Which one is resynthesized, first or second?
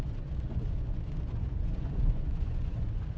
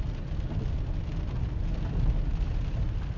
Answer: first